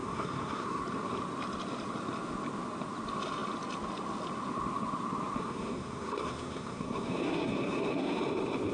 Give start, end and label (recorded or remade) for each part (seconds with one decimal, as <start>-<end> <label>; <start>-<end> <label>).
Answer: 0.0-0.8 remade; 0.8-5.4 recorded; 5.4-8.2 remade; 8.2-8.7 recorded